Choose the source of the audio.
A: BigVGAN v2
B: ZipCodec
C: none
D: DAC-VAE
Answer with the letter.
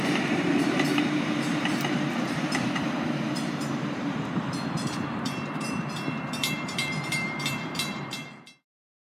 A